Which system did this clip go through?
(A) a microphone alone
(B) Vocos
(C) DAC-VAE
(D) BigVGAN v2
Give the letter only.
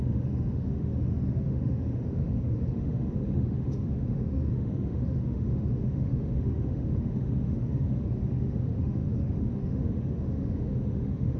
C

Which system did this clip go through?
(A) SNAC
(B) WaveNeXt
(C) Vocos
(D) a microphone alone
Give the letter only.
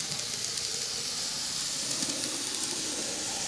D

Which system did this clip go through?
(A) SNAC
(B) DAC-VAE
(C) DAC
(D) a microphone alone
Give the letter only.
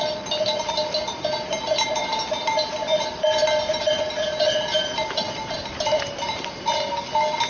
D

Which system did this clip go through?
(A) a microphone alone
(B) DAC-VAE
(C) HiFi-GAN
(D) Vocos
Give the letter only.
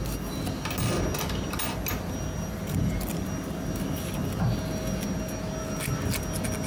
A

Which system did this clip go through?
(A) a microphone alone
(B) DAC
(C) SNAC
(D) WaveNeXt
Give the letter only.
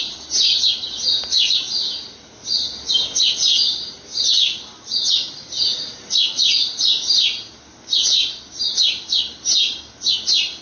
A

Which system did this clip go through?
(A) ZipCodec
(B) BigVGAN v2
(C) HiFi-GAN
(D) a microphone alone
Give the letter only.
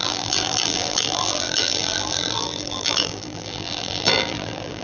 B